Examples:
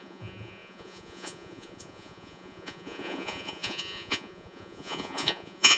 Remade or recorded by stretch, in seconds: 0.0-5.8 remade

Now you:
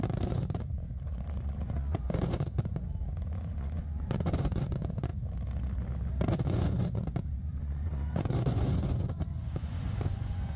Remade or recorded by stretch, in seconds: 0.0-5.1 remade; 5.1-6.3 recorded; 6.3-10.6 remade

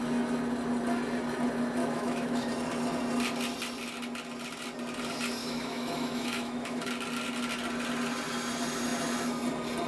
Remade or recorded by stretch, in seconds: 0.0-1.8 recorded; 1.8-2.5 remade; 2.5-5.4 recorded; 5.4-6.9 remade; 6.9-9.9 recorded